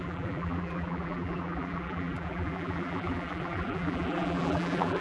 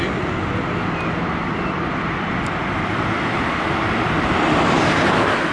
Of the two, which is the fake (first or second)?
first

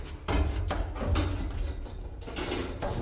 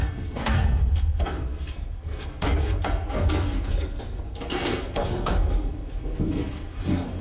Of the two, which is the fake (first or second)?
second